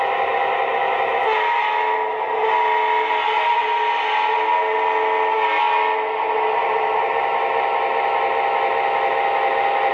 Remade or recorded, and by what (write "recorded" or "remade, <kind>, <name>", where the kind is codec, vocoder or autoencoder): recorded